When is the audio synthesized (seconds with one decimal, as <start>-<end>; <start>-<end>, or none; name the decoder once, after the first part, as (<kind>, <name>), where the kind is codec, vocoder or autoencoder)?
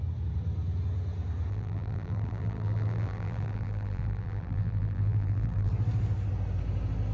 1.5-5.7 (vocoder, BigVGAN v2)